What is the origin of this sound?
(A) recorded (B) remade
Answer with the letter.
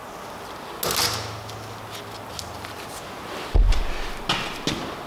A